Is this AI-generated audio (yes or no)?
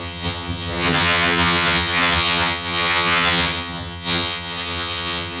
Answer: yes